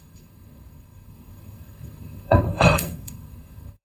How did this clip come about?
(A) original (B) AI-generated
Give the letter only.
B